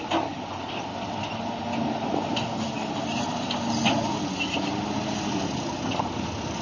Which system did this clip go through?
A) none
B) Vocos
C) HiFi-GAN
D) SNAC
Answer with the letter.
A